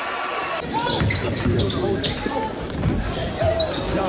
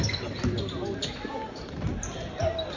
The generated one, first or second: first